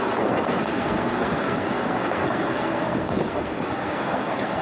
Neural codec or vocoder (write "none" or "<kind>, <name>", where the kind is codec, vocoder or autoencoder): codec, SNAC